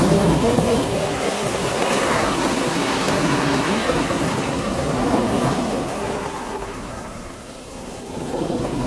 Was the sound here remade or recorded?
remade